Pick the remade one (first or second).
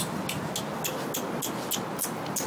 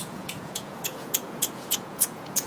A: second